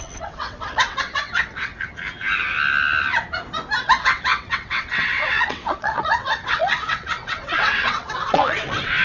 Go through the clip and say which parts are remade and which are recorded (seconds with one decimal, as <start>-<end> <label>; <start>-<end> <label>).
0.0-1.7 remade; 1.7-3.8 recorded; 3.8-9.0 remade